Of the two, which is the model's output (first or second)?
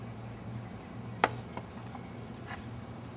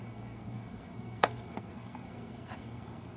second